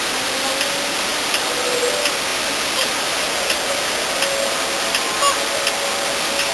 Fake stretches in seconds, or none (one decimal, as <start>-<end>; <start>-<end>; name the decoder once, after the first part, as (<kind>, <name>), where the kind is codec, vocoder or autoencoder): none